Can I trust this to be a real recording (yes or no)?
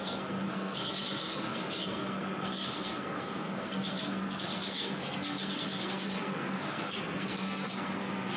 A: no